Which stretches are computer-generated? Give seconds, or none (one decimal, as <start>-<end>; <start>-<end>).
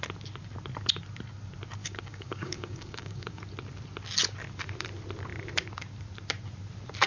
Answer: 1.8-3.4